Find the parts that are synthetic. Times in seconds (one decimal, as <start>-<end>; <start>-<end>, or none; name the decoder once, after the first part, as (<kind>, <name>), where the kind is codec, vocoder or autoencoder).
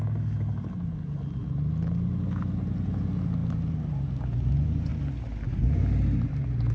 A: none